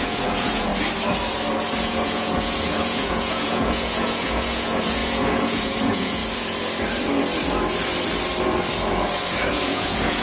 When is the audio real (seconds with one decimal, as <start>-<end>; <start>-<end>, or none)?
0.7-1.8; 6.2-9.5